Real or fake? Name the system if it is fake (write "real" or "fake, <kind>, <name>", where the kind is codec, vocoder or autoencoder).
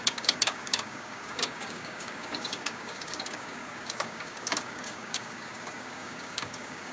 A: fake, codec, DAC